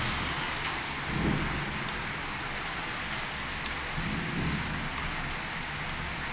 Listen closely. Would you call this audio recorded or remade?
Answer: recorded